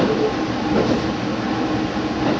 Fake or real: real